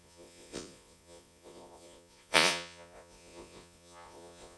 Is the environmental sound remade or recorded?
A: remade